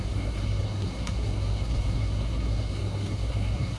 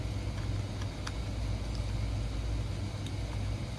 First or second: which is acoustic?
second